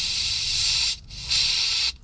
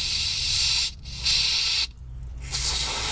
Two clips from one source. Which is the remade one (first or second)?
first